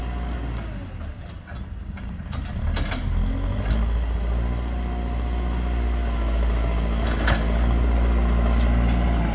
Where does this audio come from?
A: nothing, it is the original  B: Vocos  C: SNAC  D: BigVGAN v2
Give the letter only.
A